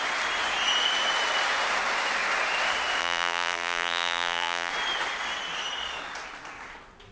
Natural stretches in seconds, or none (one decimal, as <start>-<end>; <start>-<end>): 0.0-3.0; 4.7-7.1